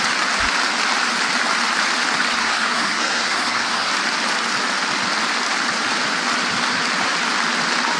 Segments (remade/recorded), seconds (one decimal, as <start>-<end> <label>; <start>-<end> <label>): 0.0-2.4 recorded; 2.4-3.9 remade; 3.9-8.0 recorded